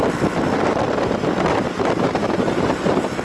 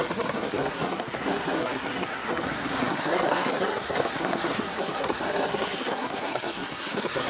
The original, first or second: first